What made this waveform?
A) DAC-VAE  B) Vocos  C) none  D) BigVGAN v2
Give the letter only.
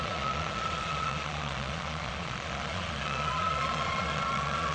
B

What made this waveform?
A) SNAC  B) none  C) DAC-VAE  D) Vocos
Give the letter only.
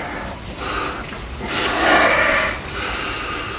B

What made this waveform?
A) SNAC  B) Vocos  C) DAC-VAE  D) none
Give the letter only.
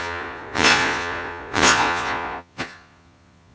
B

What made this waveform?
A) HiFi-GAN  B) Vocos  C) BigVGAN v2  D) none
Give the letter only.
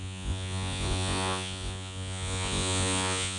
B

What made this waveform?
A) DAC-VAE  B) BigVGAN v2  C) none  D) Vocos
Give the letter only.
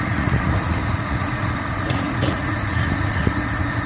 D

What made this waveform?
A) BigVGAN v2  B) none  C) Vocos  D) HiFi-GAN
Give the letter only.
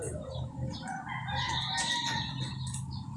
B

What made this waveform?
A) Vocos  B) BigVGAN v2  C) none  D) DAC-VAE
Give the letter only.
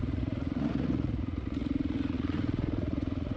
A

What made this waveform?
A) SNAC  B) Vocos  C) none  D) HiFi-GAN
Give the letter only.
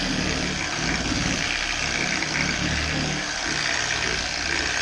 C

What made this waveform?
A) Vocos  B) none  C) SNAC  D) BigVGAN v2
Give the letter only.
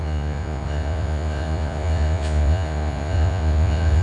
A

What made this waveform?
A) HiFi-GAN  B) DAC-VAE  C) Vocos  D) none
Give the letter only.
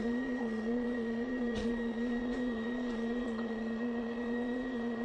C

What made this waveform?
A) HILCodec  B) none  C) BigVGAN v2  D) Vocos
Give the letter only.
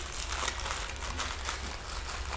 B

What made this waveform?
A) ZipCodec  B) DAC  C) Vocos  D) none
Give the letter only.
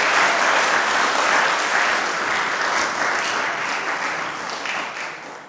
D